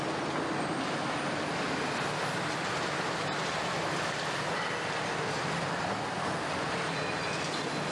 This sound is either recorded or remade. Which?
recorded